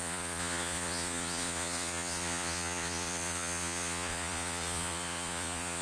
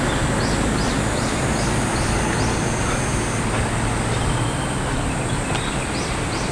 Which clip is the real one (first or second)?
second